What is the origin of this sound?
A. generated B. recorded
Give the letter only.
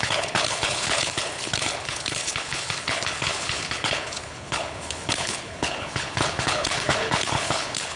A